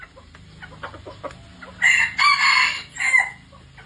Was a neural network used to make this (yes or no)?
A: no